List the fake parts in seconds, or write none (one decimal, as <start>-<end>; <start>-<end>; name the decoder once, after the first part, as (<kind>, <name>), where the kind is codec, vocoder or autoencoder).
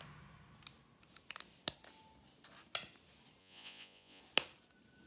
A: 3.4-4.2 (vocoder, Vocos)